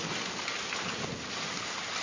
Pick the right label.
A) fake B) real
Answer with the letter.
B